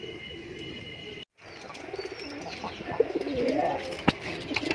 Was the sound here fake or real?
real